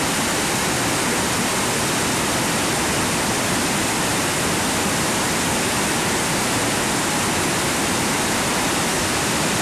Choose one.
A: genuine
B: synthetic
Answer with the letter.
A